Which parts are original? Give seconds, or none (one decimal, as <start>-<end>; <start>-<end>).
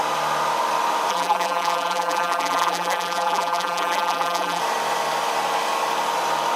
0.0-1.1; 4.6-6.6